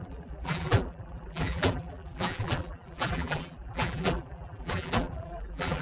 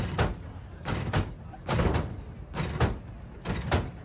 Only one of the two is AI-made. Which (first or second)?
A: first